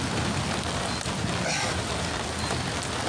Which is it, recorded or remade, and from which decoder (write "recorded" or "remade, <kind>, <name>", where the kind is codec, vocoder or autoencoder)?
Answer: recorded